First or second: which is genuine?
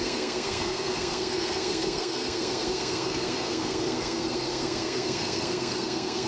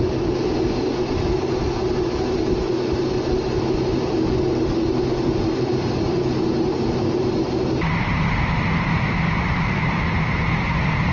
second